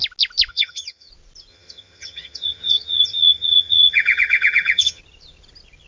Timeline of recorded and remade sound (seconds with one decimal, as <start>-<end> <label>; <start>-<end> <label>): 0.0-0.5 recorded; 0.5-1.1 remade; 1.1-1.5 recorded; 1.5-5.0 remade; 5.0-5.9 recorded